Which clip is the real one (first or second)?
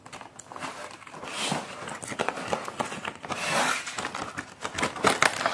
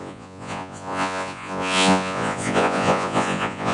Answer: first